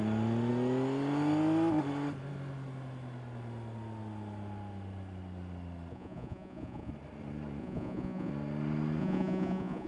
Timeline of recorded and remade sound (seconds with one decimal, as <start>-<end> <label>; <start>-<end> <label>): 0.0-5.9 recorded; 5.9-6.9 remade; 6.9-7.6 recorded; 7.6-8.3 remade; 8.3-9.0 recorded; 9.0-9.9 remade